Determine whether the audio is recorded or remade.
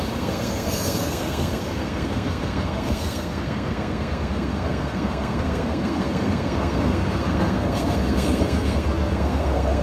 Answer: remade